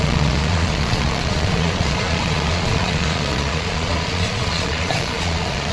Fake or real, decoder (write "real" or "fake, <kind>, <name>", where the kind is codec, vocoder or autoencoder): fake, vocoder, Vocos